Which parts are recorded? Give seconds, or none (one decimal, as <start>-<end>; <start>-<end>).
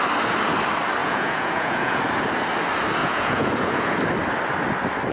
0.0-1.0; 2.0-3.0; 4.0-5.1